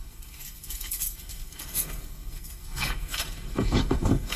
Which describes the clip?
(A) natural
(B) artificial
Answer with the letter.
B